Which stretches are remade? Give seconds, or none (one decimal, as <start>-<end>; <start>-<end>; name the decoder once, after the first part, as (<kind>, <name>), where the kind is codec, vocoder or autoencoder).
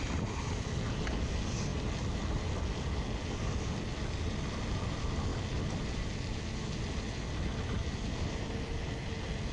none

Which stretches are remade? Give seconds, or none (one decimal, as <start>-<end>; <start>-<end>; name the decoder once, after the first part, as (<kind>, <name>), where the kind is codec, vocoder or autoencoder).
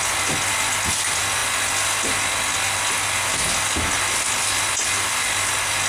none